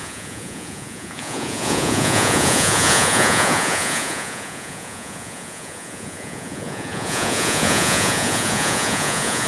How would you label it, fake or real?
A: fake